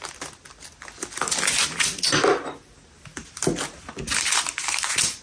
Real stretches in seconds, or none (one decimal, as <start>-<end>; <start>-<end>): 0.0-5.2